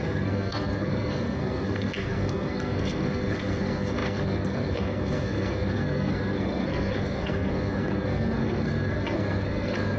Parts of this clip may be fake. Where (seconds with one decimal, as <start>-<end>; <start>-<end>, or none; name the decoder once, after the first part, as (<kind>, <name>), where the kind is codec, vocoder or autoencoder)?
0.0-10.0 (codec, SNAC)